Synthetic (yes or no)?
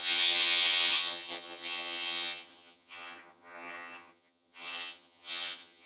yes